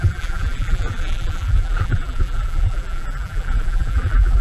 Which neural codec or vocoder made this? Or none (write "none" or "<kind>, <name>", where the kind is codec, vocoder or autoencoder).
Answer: vocoder, BigVGAN v2